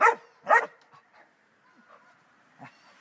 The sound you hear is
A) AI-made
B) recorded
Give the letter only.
B